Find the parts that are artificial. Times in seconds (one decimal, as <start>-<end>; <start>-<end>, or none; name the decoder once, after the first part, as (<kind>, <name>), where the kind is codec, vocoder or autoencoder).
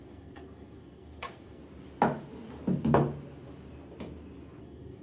0.0-1.6 (codec, SNAC); 4.6-5.0